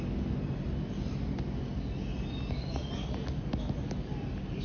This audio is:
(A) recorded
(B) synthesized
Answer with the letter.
A